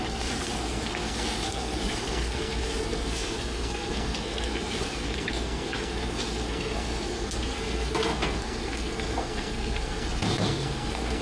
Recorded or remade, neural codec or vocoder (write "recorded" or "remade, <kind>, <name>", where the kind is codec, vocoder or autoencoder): remade, codec, SNAC